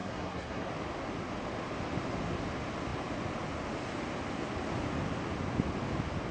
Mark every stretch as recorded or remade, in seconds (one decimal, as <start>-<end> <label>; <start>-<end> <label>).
0.0-0.7 remade; 0.7-6.3 recorded